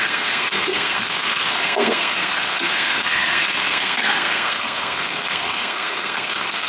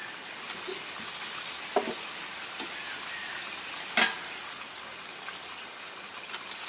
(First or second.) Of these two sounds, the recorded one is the second